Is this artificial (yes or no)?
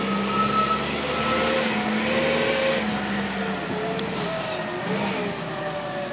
no